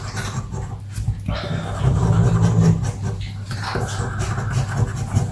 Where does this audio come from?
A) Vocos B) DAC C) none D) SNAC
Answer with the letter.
C